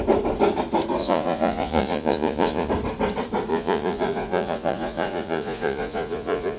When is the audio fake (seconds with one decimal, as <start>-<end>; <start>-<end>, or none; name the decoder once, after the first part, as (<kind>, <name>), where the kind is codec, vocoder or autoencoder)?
1.0-2.7 (vocoder, Vocos); 3.5-6.6